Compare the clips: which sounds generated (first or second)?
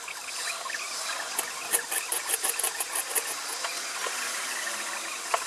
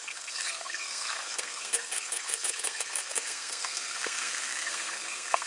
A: second